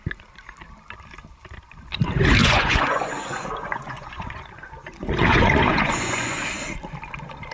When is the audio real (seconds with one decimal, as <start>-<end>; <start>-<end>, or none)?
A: 0.0-2.4; 6.4-7.5